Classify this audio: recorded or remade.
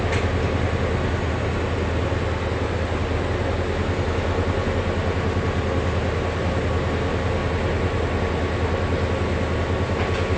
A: recorded